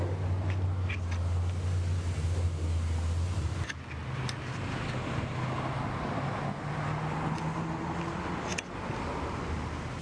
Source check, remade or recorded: recorded